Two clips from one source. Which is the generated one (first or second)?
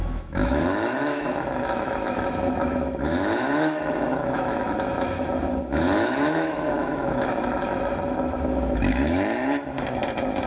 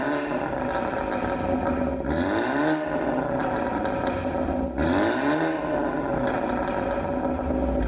first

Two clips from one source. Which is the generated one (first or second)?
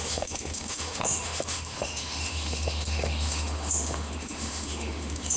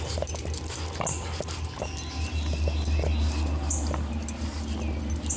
first